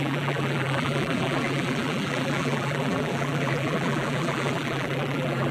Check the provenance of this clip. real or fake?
fake